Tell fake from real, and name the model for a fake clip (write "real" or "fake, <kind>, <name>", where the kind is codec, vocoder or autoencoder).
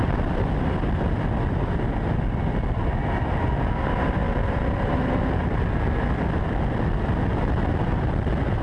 fake, vocoder, BigVGAN v2